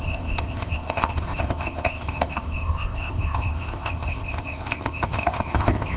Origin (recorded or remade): remade